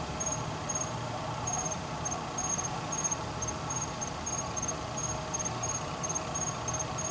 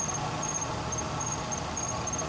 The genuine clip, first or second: second